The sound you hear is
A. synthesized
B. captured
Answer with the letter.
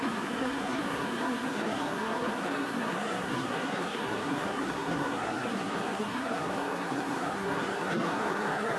A